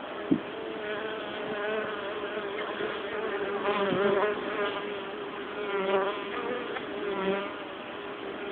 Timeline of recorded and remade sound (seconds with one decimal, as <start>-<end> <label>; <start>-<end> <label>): 0.0-5.4 recorded; 5.4-7.4 remade; 7.4-8.5 recorded